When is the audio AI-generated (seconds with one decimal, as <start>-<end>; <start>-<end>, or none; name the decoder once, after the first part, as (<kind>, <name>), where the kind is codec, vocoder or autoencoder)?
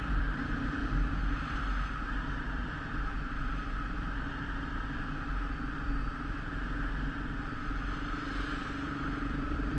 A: 0.0-0.8 (vocoder, BigVGAN v2); 1.3-6.0; 8.1-9.8